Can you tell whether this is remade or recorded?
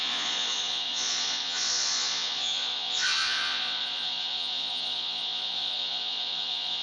remade